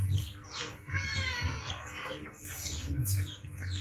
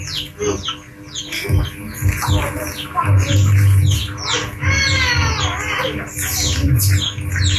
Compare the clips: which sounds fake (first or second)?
first